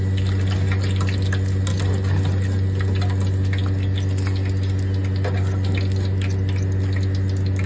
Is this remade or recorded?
recorded